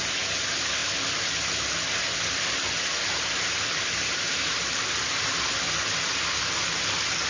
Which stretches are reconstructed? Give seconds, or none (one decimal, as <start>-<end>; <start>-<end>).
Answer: none